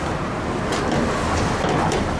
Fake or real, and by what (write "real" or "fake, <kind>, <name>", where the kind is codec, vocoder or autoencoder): real